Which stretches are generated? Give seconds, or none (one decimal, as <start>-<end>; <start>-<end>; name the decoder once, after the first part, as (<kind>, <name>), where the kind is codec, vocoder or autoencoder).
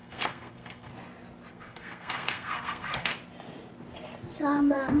0.0-0.9 (codec, SNAC); 1.5-3.1; 4.6-5.0